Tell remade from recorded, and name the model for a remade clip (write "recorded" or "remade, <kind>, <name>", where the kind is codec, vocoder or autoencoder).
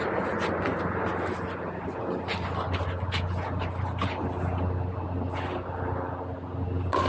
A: recorded